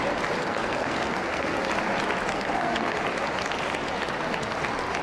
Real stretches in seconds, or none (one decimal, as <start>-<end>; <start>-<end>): 0.0-0.4; 1.6-2.3; 3.0-5.0